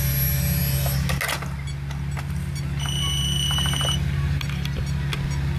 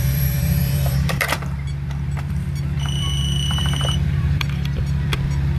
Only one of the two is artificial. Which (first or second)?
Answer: second